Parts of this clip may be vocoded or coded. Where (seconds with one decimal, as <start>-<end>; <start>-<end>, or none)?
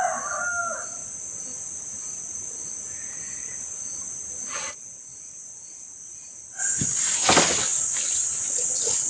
1.0-2.5; 5.1-6.6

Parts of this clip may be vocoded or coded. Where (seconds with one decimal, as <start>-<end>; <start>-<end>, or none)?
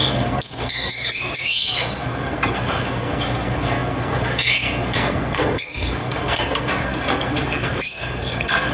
0.0-8.7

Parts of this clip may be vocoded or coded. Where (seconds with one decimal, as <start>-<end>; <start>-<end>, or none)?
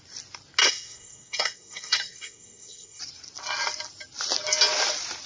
0.6-3.0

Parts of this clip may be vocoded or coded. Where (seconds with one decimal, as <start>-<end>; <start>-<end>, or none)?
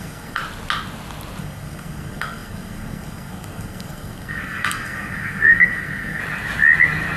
0.0-0.4; 1.4-6.2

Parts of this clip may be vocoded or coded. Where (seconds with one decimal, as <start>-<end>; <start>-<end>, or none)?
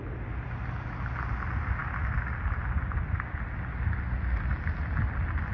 none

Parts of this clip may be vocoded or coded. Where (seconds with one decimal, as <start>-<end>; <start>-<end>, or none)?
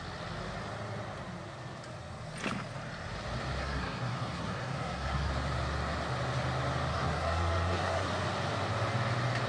3.6-5.3; 6.9-8.1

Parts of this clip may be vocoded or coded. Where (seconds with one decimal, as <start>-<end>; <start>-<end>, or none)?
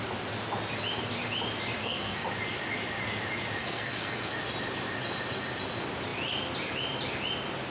1.8-2.3; 3.6-4.3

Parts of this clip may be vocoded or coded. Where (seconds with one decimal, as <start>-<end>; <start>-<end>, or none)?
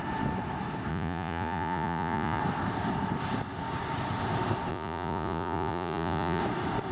0.9-2.4; 4.7-6.4